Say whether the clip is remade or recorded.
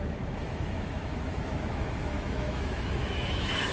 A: remade